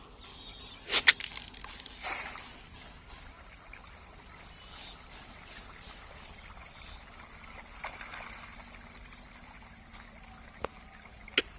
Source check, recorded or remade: recorded